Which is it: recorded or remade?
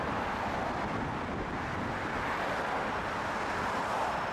recorded